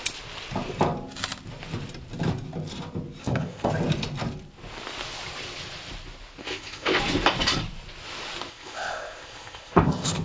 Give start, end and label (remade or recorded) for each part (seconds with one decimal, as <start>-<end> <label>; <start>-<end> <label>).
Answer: 0.0-3.2 recorded; 3.2-3.7 remade; 3.7-6.4 recorded; 6.4-7.0 remade; 7.0-8.5 recorded; 8.5-10.2 remade